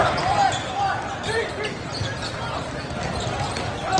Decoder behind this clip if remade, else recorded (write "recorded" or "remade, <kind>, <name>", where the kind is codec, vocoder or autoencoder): recorded